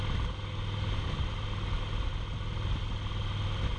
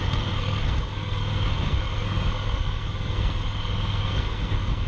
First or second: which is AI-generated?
second